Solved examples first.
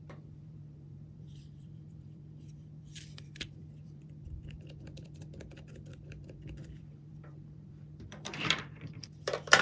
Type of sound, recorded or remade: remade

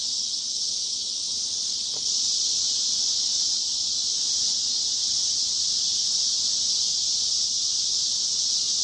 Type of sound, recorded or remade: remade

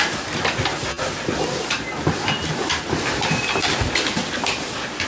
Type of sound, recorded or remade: recorded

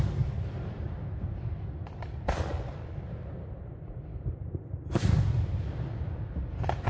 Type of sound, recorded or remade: recorded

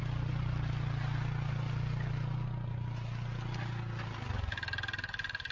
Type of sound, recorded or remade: recorded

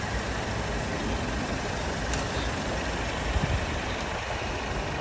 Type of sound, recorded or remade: recorded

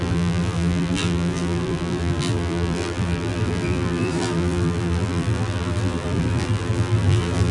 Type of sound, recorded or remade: remade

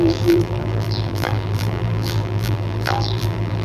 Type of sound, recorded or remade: remade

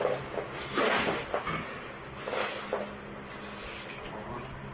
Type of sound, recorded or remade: recorded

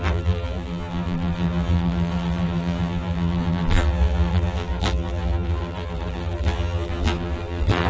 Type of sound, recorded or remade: remade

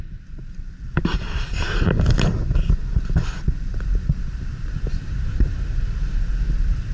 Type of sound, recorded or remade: remade